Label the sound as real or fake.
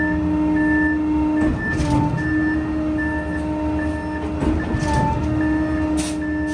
real